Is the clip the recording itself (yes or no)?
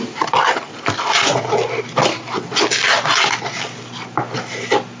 yes